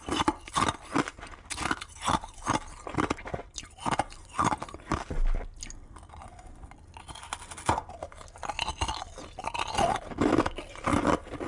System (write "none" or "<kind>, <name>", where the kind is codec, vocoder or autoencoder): none